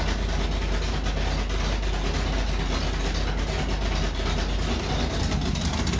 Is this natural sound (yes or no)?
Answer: yes